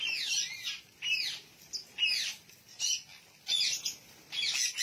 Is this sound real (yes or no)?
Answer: yes